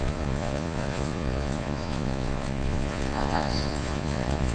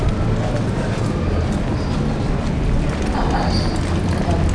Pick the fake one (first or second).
first